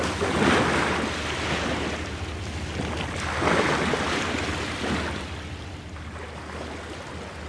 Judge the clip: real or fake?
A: real